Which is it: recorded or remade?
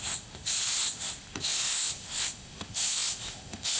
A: remade